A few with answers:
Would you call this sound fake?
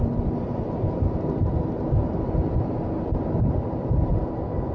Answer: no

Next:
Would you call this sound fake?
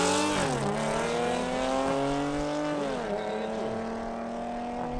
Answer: no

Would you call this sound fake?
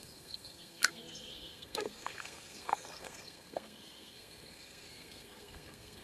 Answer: yes